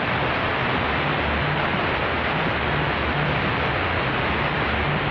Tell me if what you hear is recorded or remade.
recorded